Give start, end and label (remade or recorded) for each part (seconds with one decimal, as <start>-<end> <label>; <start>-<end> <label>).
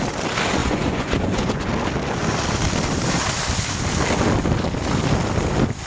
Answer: 0.0-0.6 recorded; 0.6-1.7 remade; 1.7-5.9 recorded